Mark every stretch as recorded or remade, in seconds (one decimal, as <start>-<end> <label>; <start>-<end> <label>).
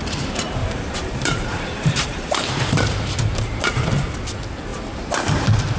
0.0-0.6 recorded; 0.6-4.1 remade; 4.1-5.8 recorded